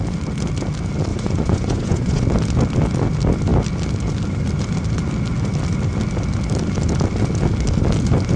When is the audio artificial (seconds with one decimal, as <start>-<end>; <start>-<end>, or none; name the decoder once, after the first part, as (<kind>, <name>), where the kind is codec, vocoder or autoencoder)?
1.1-2.2 (vocoder, Vocos)